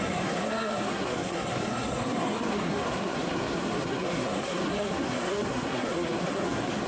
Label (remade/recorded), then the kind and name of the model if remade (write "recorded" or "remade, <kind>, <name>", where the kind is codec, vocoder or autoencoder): remade, codec, SNAC